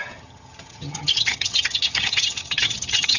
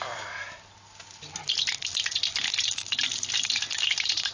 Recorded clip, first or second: second